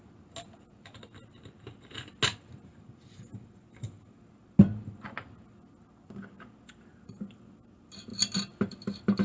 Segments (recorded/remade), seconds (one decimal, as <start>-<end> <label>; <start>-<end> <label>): 0.0-9.2 recorded